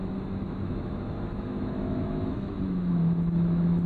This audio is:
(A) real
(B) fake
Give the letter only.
B